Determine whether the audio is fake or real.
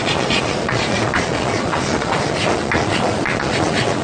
fake